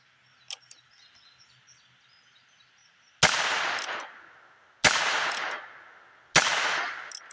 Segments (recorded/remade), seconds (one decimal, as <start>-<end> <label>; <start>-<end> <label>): 0.0-7.3 recorded